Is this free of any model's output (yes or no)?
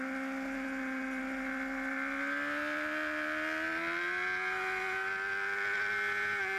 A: yes